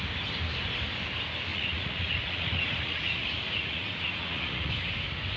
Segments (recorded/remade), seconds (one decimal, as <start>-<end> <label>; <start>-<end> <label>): 0.0-1.5 recorded; 1.5-4.7 remade; 4.7-5.4 recorded